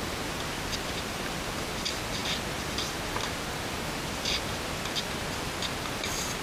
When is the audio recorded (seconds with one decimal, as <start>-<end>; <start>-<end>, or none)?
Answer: 0.0-6.4